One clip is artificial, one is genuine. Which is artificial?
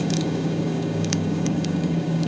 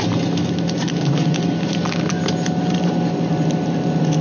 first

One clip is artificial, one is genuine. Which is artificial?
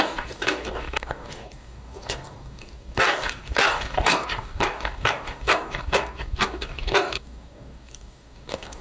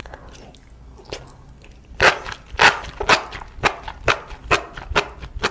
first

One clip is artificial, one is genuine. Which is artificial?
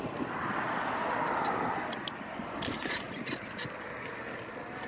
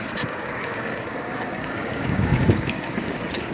second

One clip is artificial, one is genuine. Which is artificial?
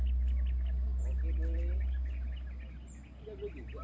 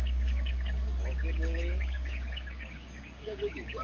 second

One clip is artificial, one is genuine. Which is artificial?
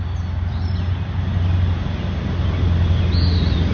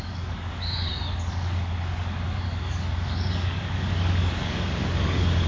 second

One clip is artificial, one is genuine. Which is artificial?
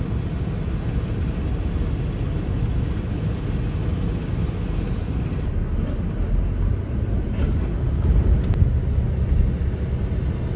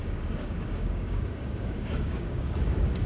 second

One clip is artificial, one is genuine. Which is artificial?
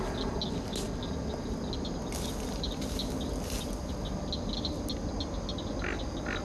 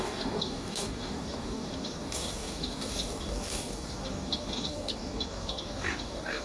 second